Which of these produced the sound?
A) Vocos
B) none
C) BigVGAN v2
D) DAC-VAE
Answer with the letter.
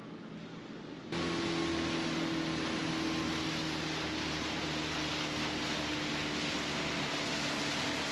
B